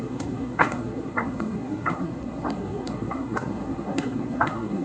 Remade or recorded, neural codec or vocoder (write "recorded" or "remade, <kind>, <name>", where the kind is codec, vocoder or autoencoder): remade, codec, SNAC